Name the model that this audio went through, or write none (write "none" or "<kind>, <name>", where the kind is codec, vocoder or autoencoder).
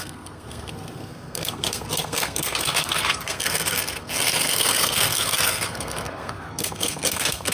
codec, SNAC